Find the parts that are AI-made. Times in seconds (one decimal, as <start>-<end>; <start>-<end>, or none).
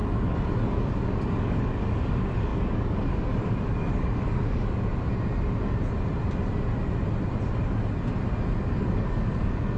0.0-4.9; 8.6-9.8